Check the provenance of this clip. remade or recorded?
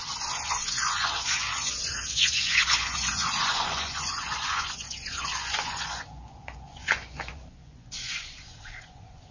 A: remade